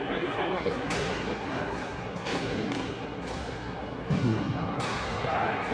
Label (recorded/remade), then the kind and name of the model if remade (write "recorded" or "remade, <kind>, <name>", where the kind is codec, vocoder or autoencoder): remade, codec, SNAC